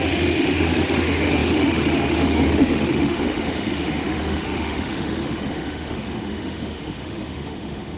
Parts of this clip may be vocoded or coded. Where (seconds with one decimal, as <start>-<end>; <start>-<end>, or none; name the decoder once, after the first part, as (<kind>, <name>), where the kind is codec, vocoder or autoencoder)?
0.0-8.0 (autoencoder, DAC-VAE)